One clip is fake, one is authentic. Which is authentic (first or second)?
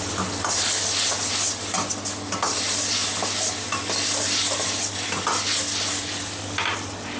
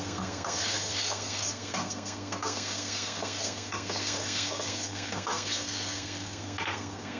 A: first